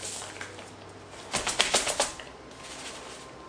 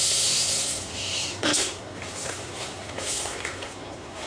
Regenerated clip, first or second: second